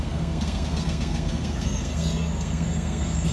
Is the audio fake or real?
fake